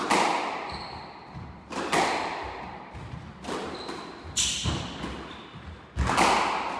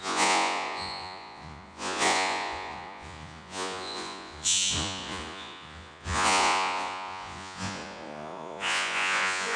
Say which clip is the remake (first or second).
second